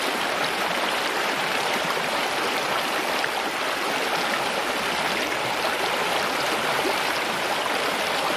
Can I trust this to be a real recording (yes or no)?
no